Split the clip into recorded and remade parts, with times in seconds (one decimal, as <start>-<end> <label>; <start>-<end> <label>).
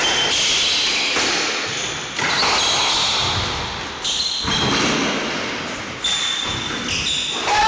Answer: 0.0-7.7 recorded